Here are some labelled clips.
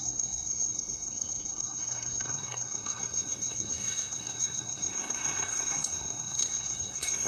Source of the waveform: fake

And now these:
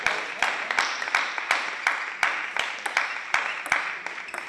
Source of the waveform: real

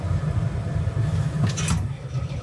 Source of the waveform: real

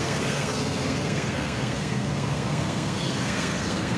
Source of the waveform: fake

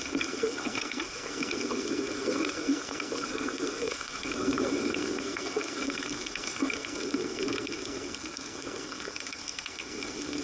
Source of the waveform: fake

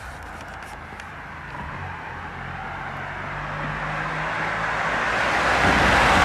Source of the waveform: real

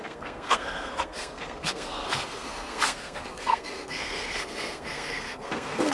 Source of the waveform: fake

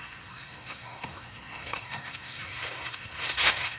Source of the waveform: fake